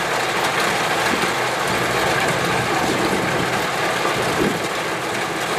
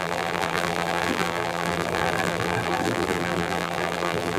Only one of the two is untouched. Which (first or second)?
first